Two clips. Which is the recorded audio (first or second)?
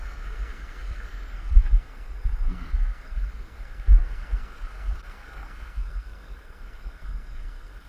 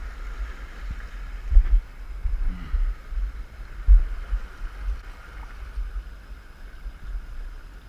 second